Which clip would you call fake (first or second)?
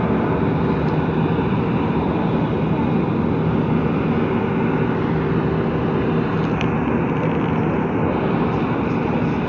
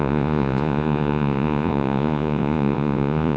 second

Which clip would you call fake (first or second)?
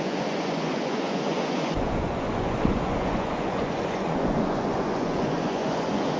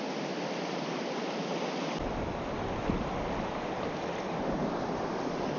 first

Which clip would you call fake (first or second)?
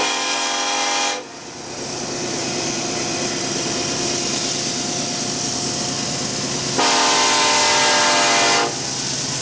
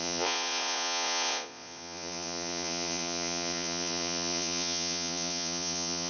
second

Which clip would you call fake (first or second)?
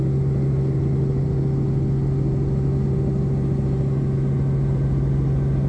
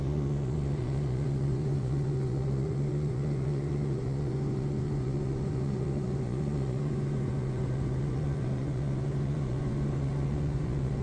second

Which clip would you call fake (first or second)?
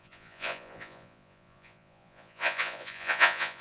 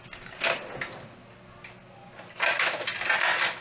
first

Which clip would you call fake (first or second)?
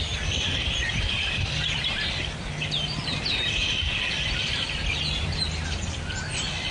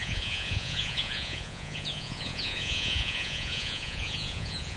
second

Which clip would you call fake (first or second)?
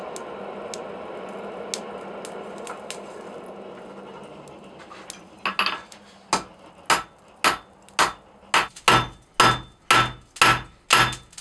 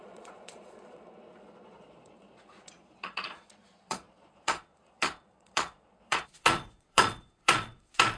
second